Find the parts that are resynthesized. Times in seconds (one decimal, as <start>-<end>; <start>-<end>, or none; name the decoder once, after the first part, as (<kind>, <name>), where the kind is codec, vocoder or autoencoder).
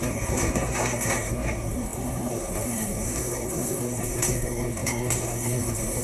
0.0-6.0 (codec, SNAC)